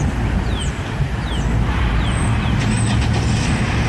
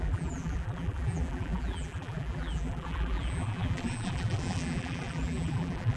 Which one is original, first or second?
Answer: first